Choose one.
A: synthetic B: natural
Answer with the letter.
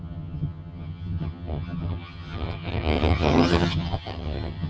A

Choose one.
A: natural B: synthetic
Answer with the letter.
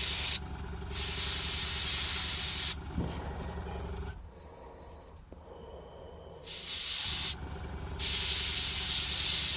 A